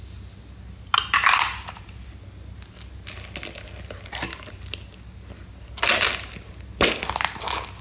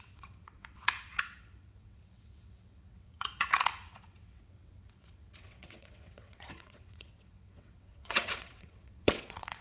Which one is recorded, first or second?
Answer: first